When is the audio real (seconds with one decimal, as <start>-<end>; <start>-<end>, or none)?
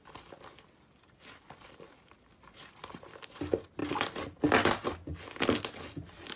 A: 0.0-6.4